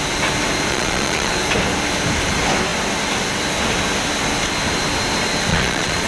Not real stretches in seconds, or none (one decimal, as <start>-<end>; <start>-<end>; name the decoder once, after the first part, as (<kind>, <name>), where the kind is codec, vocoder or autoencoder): 0.7-1.3 (vocoder, Vocos); 5.5-6.1

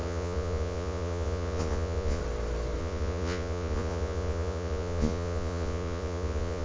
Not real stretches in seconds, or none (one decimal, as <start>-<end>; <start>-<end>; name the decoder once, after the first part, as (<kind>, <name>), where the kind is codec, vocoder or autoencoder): 0.0-2.2 (vocoder, Vocos); 2.8-6.6